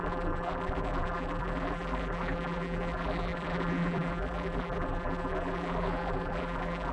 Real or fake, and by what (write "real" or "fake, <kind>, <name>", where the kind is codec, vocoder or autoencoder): fake, vocoder, BigVGAN v2